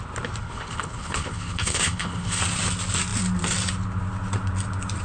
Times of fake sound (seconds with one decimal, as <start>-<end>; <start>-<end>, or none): 0.4-2.4